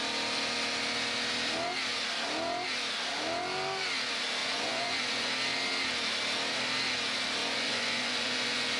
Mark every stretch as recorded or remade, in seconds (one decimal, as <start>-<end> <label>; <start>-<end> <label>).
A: 0.0-4.4 recorded; 4.4-5.3 remade; 5.3-7.4 recorded; 7.4-8.8 remade